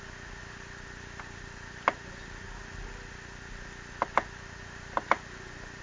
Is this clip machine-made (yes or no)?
no